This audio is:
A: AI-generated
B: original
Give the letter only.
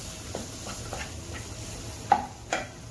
B